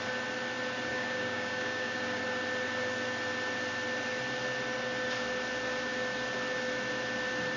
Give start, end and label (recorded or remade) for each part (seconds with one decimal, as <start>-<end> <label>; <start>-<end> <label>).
0.0-0.9 recorded; 0.9-2.2 remade; 2.2-7.6 recorded